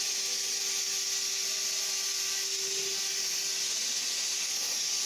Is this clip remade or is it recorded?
recorded